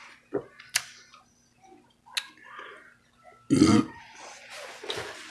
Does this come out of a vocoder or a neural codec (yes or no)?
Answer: no